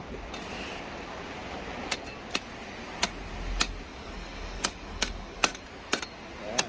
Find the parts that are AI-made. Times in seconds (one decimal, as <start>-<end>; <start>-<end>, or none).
3.9-5.6